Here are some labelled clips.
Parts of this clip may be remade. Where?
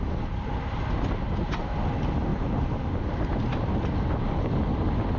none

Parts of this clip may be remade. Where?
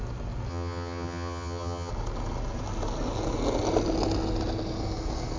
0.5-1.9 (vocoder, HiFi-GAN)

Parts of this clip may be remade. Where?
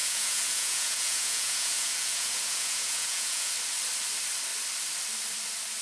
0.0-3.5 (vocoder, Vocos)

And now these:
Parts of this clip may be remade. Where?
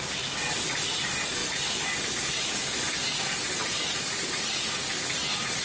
none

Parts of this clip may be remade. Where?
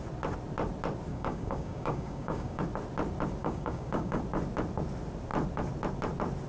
1.1-2.6 (codec, DAC); 3.4-4.2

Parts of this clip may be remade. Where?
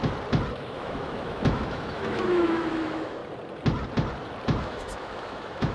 0.5-3.2 (autoencoder, DAC-VAE); 4.6-5.7